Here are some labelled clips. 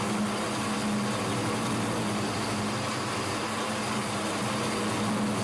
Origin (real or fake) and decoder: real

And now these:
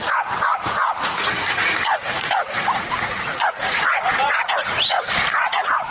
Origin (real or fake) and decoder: fake, vocoder, Vocos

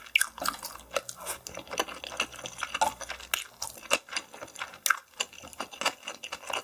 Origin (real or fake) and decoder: real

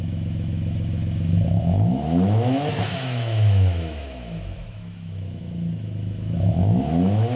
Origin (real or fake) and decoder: fake, autoencoder, DAC-VAE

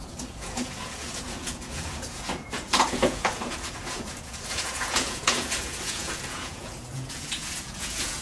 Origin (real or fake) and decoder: fake, vocoder, Vocos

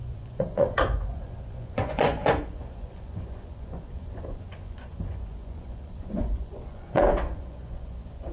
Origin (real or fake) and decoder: fake, vocoder, Vocos